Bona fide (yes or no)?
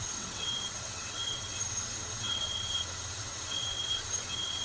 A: no